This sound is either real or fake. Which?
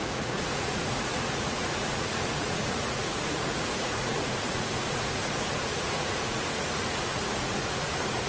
fake